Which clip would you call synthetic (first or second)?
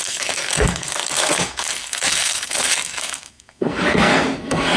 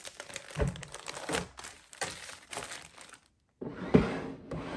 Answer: first